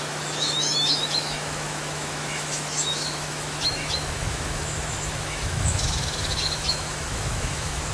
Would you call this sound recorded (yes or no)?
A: no